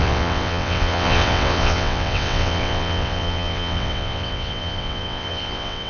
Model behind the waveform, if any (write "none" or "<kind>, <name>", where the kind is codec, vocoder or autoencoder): vocoder, WaveNeXt